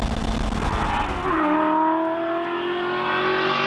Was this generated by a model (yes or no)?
no